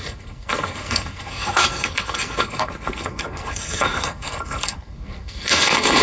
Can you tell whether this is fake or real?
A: fake